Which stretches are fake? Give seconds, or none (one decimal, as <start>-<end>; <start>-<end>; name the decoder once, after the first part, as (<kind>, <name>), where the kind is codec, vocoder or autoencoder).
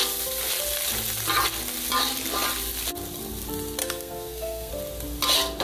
3.8-4.7 (codec, SNAC)